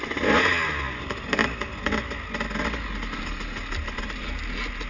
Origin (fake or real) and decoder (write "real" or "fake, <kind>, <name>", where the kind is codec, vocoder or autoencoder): real